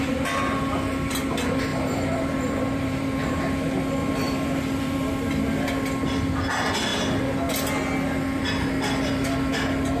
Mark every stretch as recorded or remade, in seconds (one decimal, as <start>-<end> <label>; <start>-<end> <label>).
0.0-1.7 recorded; 1.7-3.4 remade; 3.4-4.0 recorded; 4.0-5.1 remade; 5.1-10.0 recorded